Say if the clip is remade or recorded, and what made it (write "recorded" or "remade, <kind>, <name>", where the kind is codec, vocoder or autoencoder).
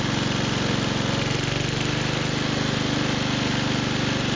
recorded